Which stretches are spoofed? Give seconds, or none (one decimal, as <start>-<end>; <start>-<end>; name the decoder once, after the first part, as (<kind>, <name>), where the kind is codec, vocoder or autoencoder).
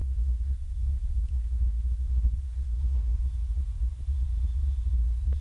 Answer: 0.0-3.2 (codec, SNAC)